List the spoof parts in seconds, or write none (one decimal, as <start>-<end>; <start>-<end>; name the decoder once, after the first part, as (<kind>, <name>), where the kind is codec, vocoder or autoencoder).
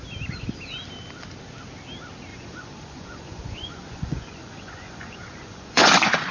2.3-6.3 (vocoder, Vocos)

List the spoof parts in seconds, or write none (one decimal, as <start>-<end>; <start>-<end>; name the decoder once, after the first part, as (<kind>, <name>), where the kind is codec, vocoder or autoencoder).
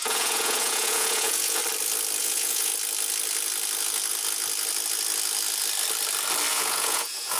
0.0-1.6 (vocoder, Vocos); 2.2-2.7; 6.5-7.4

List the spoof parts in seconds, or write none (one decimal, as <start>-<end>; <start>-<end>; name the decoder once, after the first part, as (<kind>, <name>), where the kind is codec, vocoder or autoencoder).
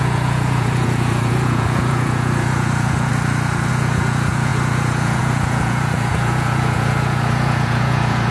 0.0-3.1 (vocoder, Vocos); 3.7-8.3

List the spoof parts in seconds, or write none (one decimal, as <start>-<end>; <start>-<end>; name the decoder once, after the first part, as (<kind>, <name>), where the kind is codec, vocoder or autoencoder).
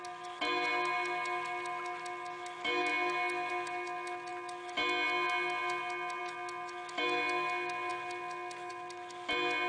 none